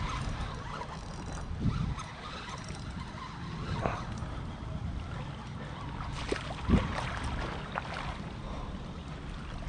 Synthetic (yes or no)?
no